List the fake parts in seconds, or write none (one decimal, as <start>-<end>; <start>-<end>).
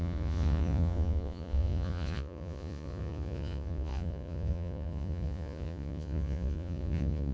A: 0.0-7.3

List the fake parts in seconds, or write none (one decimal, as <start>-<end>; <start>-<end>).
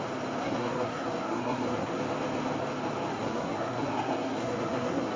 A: 0.4-2.0; 3.1-5.2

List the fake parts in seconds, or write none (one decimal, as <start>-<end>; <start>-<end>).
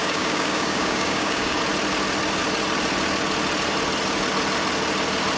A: 0.0-1.6